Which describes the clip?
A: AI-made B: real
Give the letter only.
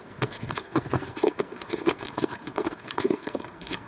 A